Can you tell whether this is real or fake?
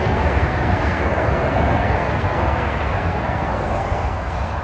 fake